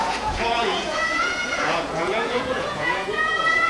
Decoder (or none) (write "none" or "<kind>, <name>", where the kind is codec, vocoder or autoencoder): vocoder, Vocos